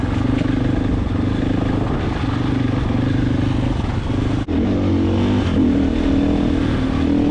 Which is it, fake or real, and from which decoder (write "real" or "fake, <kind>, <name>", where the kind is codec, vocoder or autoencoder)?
real